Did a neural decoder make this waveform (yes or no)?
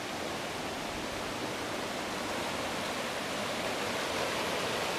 no